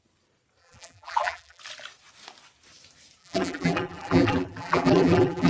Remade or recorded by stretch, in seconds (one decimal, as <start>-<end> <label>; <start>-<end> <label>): 0.0-0.6 recorded; 0.6-1.6 remade; 1.6-3.2 recorded; 3.2-5.5 remade